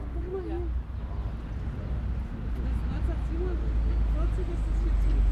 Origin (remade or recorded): recorded